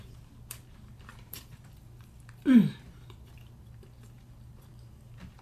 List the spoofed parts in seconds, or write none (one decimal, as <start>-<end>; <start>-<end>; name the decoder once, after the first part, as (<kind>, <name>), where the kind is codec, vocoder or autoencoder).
0.0-5.4 (vocoder, BigVGAN v2)